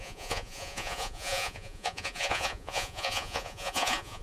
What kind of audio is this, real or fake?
fake